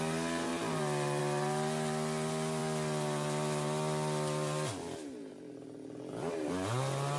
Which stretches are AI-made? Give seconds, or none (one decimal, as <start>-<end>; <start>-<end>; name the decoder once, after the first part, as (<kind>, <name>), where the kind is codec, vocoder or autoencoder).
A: none